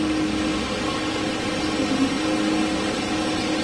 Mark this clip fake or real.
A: real